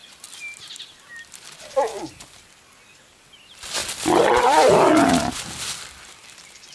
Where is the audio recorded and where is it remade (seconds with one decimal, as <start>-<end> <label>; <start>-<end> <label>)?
0.0-2.5 remade; 2.5-3.8 recorded; 3.8-5.3 remade; 5.3-6.7 recorded